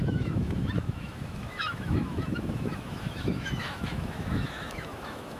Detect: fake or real fake